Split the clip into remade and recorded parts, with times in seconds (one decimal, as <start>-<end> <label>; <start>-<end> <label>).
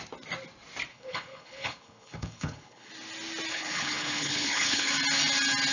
0.0-0.9 recorded; 0.9-2.9 remade; 2.9-3.5 recorded; 3.5-4.9 remade; 4.9-5.7 recorded